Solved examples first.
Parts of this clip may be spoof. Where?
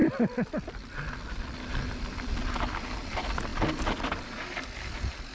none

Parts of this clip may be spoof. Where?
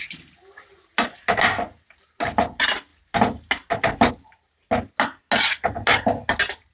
none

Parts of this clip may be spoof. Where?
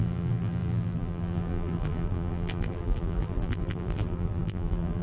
0.0-5.0 (vocoder, BigVGAN v2)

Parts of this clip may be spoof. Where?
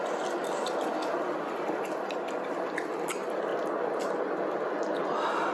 none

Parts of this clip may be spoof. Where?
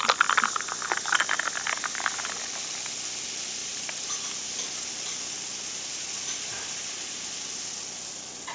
3.6-4.6 (vocoder, BigVGAN v2); 6.5-7.1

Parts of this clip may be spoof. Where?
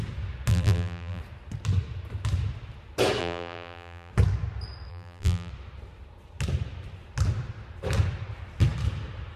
0.5-1.2 (vocoder, BigVGAN v2); 3.2-4.1; 4.9-5.5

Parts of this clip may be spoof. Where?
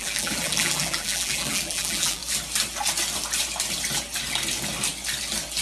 0.0-2.2 (vocoder, BigVGAN v2)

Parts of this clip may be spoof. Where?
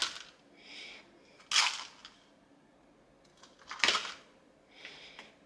none